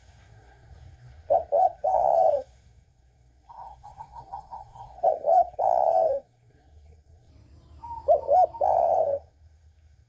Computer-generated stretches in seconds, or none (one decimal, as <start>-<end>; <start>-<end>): 0.0-7.3; 8.7-10.1